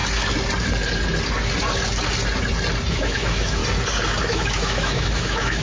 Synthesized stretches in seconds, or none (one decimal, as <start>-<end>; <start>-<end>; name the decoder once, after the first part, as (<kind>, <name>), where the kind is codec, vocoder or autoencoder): 2.9-3.6 (autoencoder, DAC-VAE); 4.2-5.6